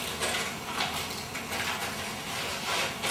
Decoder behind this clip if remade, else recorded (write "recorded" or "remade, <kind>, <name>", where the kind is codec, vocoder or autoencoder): recorded